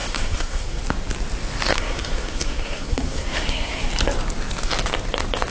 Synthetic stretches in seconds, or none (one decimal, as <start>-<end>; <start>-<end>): 0.0-0.8; 1.7-3.9